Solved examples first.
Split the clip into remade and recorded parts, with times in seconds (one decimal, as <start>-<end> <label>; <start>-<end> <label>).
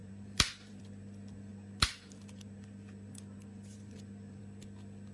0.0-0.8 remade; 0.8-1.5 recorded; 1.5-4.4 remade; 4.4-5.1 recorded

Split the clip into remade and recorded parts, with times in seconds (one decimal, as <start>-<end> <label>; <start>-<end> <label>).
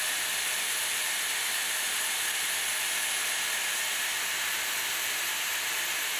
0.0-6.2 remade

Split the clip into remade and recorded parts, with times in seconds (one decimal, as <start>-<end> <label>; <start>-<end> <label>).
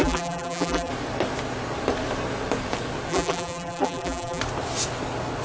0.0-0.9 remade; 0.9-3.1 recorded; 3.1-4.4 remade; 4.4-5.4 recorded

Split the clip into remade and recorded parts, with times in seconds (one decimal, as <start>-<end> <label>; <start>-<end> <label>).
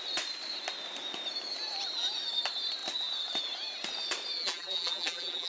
0.0-4.4 recorded; 4.4-5.5 remade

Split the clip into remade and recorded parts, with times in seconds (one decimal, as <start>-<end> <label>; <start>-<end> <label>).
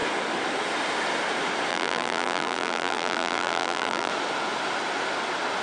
0.0-1.7 recorded; 1.7-4.1 remade; 4.1-5.6 recorded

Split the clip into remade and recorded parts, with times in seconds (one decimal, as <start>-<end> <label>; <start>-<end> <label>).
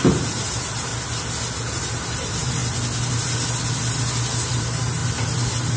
0.0-0.9 remade; 0.9-1.7 recorded; 1.7-2.6 remade; 2.6-4.5 recorded; 4.5-5.0 remade; 5.0-5.8 recorded